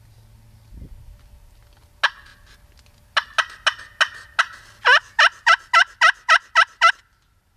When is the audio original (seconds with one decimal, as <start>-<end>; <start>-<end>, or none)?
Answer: 0.0-7.6